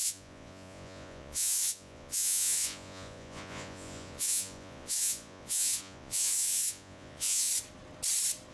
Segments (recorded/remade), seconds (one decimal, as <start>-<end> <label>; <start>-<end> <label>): 0.0-7.5 remade; 7.5-8.5 recorded